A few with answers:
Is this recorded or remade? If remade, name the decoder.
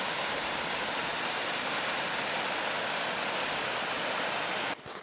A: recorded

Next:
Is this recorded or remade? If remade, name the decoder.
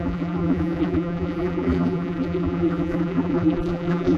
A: remade, vocoder, BigVGAN v2